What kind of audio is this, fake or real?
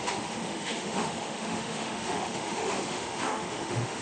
fake